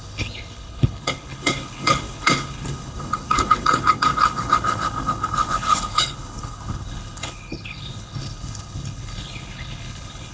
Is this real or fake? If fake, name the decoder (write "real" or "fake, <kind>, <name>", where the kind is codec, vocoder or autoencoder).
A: fake, codec, HILCodec